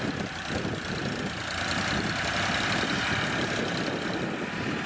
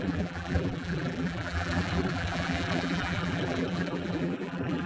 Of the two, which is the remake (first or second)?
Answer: second